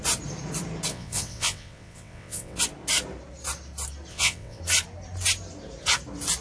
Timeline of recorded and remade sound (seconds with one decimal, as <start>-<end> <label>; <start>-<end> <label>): 0.0-0.9 recorded; 0.9-2.6 remade; 2.6-4.1 recorded; 4.1-4.6 remade; 4.6-6.4 recorded